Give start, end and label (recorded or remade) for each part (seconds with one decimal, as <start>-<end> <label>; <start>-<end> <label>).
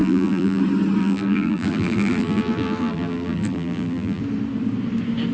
0.0-0.6 remade; 0.6-1.0 recorded; 1.0-4.2 remade; 4.2-5.3 recorded